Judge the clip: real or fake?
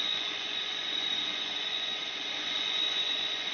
fake